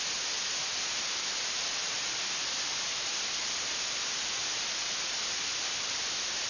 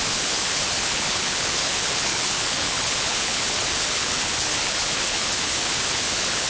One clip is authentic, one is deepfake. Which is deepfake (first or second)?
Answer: second